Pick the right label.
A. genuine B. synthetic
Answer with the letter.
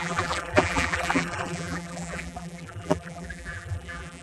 B